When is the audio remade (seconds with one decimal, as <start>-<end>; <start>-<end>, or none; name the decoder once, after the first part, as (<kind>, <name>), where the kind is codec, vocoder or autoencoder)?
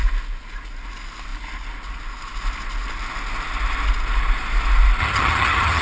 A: 5.0-5.8 (vocoder, HiFi-GAN)